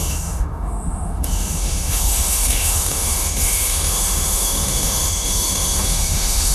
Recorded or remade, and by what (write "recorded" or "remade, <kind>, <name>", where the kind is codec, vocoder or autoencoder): remade, autoencoder, DAC-VAE